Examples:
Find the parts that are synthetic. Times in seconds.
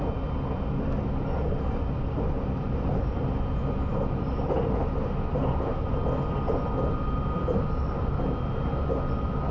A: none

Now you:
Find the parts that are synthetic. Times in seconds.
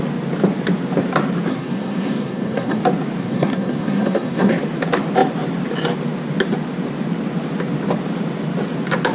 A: 1.5-2.8 (codec, SNAC); 3.2-4.5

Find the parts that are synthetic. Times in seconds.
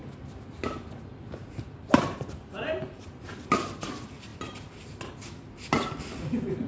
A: none